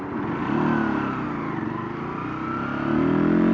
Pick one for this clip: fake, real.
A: real